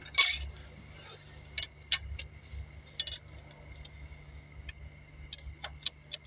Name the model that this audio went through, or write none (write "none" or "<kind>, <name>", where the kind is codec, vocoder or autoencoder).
none